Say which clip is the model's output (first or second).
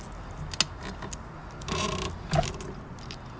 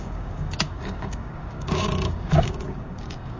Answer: second